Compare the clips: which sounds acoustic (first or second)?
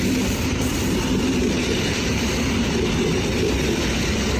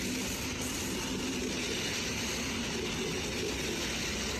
second